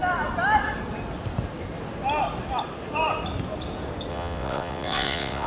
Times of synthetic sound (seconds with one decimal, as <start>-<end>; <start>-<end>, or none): 4.1-5.5